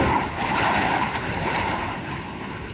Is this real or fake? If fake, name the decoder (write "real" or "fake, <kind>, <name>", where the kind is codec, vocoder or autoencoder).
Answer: real